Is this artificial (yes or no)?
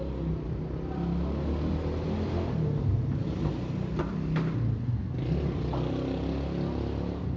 no